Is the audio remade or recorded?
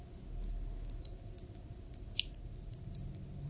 recorded